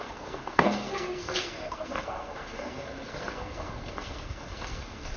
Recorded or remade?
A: remade